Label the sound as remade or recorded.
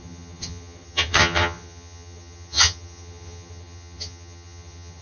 remade